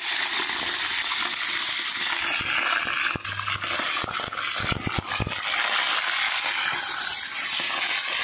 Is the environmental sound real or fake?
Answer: real